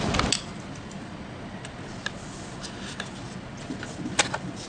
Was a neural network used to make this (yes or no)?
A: no